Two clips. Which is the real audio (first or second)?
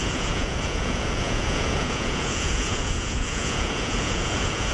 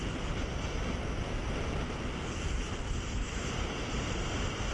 second